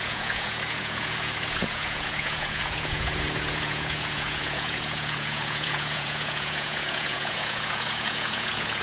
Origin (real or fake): fake